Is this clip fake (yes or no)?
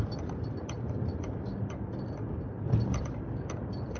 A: no